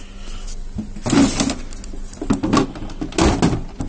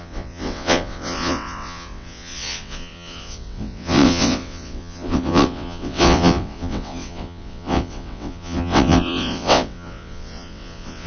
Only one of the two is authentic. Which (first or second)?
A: first